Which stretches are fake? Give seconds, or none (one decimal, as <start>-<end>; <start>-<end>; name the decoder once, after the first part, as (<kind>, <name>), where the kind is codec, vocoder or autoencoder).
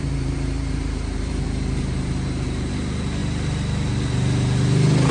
0.0-2.7 (vocoder, BigVGAN v2)